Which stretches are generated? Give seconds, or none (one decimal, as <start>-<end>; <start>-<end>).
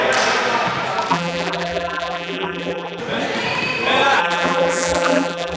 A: 1.1-3.0; 4.2-5.6